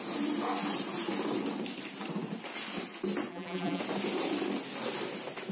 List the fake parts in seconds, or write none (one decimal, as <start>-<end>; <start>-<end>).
3.3-3.8